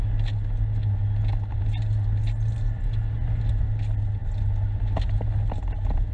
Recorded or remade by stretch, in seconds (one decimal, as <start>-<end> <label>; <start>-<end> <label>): 0.0-6.1 recorded